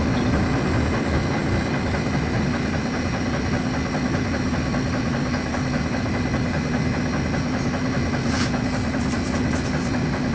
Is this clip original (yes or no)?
yes